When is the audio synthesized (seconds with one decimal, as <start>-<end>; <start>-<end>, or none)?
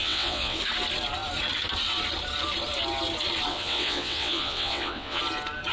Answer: 0.0-0.6; 3.5-5.2